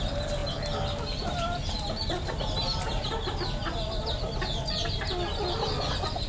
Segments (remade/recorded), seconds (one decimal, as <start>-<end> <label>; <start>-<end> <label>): 0.0-6.3 recorded

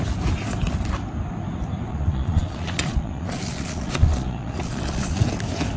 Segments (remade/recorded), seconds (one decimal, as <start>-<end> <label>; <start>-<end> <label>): 0.0-1.9 recorded; 1.9-5.3 remade; 5.3-5.8 recorded

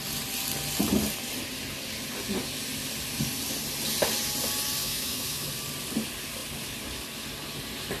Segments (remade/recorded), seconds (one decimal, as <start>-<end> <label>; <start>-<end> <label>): 0.0-4.8 recorded; 4.8-5.5 remade; 5.5-8.0 recorded

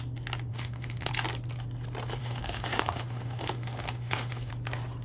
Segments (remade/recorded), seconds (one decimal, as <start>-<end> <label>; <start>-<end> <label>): 0.0-0.5 recorded; 0.5-1.1 remade; 1.1-2.2 recorded; 2.2-4.5 remade; 4.5-5.0 recorded

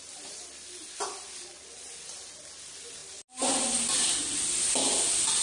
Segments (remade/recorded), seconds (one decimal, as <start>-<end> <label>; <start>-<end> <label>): 0.0-5.4 recorded